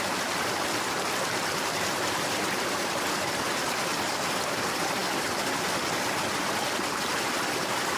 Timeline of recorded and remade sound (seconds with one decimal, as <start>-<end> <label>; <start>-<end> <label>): 0.0-8.0 recorded